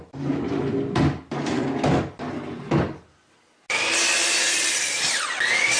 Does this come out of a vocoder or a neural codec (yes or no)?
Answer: no